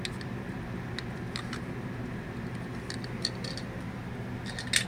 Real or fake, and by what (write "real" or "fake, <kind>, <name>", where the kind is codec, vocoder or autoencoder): real